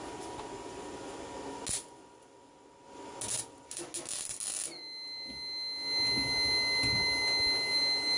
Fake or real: real